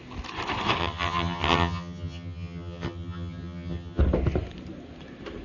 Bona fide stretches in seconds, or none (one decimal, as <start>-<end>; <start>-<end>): 0.0-0.8; 4.0-5.4